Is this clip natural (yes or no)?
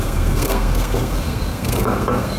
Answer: no